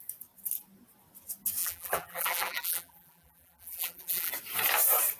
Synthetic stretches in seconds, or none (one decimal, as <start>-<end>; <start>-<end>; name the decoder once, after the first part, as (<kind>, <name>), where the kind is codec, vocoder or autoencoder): 1.6-4.3 (vocoder, BigVGAN v2)